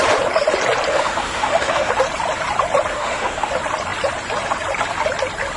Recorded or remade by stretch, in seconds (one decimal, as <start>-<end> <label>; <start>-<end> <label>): 0.0-0.9 recorded; 0.9-1.9 remade; 1.9-2.9 recorded; 2.9-3.5 remade; 3.5-5.6 recorded